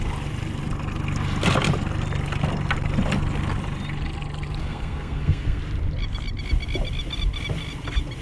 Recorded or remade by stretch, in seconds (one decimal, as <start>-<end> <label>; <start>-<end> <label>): 0.0-4.6 recorded; 4.6-5.6 remade; 5.6-8.2 recorded